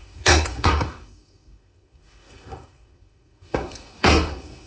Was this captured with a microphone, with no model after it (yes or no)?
no